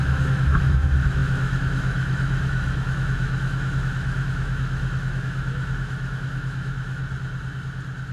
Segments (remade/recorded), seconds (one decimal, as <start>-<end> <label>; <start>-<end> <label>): 0.0-7.0 remade; 7.0-8.1 recorded